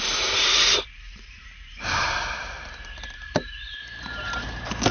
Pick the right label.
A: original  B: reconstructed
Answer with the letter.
B